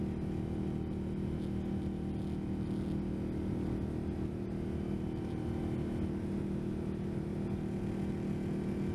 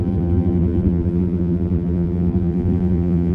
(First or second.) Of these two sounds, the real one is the first